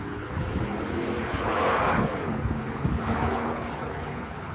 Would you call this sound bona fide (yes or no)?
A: no